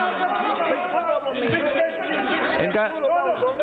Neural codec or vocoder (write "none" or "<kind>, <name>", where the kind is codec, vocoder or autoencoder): autoencoder, DAC-VAE